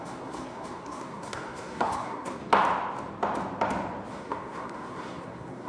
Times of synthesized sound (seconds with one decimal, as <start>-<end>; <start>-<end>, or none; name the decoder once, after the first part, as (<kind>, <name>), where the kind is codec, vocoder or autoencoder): 0.0-2.4 (codec, SNAC); 4.1-5.7